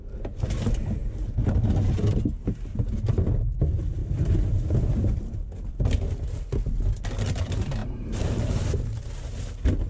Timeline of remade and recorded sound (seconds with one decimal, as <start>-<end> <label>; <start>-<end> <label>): 0.0-4.0 recorded; 4.0-5.7 remade; 5.7-7.8 recorded; 7.8-8.8 remade; 8.8-9.9 recorded